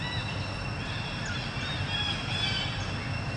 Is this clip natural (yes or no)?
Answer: yes